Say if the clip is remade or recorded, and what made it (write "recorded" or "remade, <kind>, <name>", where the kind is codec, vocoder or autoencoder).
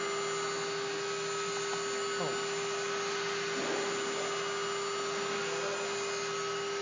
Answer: recorded